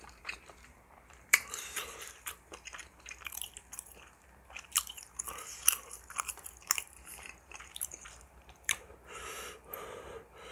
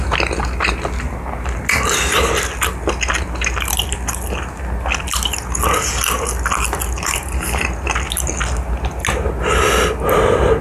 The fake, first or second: first